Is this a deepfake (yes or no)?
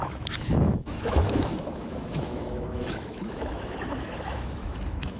yes